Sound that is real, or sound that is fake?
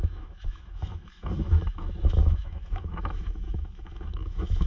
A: fake